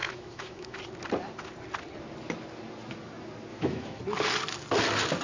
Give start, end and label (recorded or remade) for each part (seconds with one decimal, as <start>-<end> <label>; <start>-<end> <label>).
0.0-0.8 remade; 0.8-3.5 recorded; 3.5-4.0 remade; 4.0-5.2 recorded